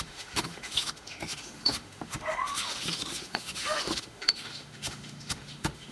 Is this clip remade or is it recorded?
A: remade